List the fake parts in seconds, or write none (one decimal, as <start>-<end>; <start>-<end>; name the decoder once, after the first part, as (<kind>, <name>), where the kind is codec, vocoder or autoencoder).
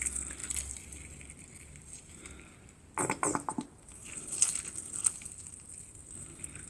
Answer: 0.4-4.4 (vocoder, BigVGAN v2); 6.0-6.7